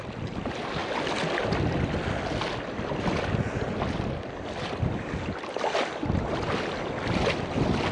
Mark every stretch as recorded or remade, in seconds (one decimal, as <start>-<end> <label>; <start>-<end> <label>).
0.0-7.9 recorded